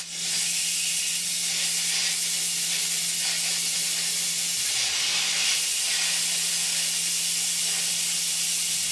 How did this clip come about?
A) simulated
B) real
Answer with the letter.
B